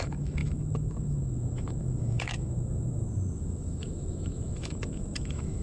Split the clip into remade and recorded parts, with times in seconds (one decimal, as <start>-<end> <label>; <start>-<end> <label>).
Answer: 0.0-5.6 remade